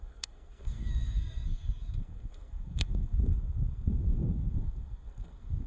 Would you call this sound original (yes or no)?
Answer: no